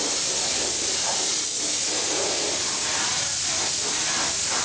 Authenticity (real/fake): real